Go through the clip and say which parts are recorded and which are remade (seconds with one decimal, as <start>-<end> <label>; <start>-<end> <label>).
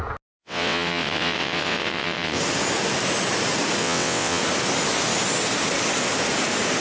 0.0-0.4 recorded; 0.4-2.4 remade; 2.4-3.8 recorded; 3.8-4.4 remade; 4.4-6.8 recorded